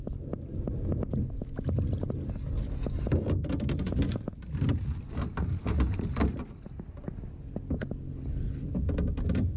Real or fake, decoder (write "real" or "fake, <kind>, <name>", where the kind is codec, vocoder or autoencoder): real